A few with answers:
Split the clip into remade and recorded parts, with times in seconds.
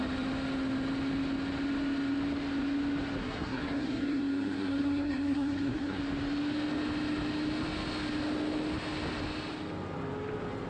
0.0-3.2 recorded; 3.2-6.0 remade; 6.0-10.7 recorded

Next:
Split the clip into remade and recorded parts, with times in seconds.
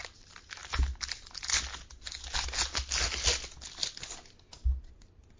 0.0-5.4 recorded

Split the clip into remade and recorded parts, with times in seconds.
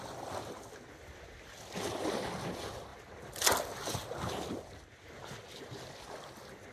0.0-6.7 recorded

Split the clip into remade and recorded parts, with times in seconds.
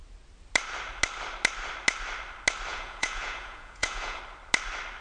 0.0-2.7 recorded; 2.7-4.2 remade; 4.2-5.0 recorded